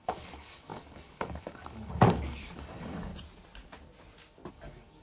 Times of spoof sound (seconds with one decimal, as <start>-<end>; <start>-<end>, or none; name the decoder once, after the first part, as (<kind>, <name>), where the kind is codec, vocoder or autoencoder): 0.0-3.1 (codec, DAC); 4.5-5.0